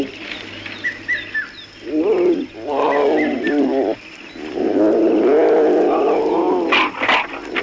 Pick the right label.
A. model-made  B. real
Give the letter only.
B